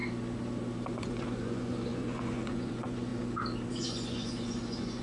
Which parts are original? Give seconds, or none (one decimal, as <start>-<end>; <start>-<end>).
0.0-0.9; 3.1-3.7